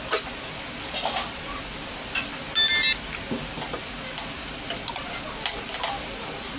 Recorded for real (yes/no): yes